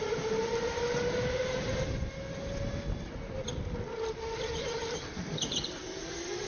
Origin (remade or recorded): recorded